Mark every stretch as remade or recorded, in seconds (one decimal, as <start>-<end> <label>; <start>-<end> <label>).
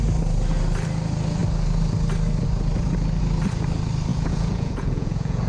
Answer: 0.0-4.1 recorded; 4.1-5.5 remade